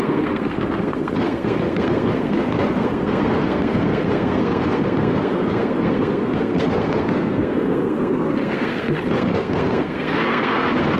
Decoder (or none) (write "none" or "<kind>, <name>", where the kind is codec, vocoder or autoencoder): codec, SNAC